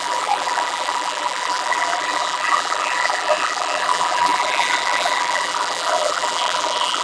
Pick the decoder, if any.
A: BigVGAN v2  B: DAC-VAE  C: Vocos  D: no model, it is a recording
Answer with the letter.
A